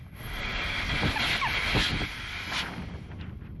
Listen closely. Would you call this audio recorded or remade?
recorded